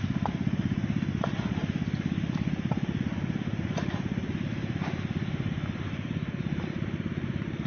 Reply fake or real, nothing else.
real